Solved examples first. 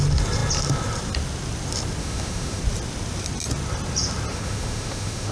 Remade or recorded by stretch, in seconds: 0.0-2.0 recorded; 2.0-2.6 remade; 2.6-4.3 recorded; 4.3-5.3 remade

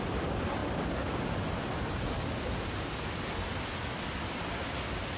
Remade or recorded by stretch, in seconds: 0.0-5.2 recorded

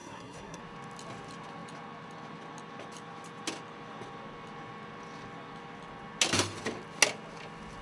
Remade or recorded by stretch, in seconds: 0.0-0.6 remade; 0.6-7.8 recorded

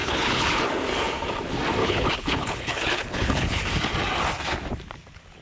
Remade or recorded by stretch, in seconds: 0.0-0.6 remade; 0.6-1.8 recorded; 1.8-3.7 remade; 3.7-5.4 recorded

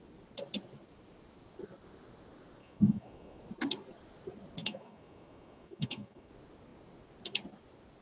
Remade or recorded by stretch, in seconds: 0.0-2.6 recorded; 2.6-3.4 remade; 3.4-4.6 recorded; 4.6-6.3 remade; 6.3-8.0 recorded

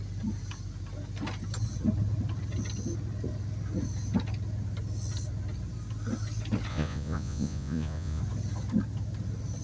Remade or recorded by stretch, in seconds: 0.0-6.7 recorded; 6.7-8.2 remade; 8.2-9.6 recorded